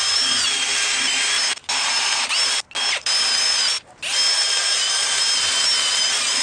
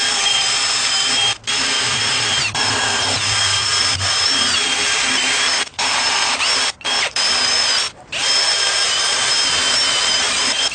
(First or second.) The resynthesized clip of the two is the second